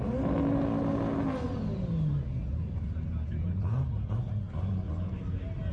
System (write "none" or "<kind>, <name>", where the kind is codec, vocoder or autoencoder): none